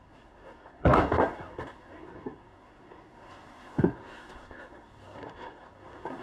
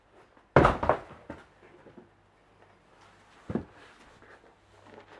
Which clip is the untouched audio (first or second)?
second